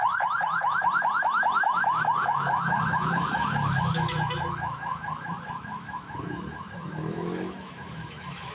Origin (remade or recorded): remade